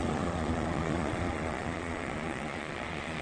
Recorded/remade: remade